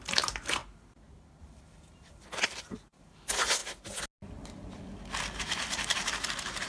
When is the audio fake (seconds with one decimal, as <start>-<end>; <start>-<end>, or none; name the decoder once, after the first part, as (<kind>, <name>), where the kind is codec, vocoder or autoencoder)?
0.0-0.6 (vocoder, BigVGAN v2); 1.4-3.6; 5.4-6.7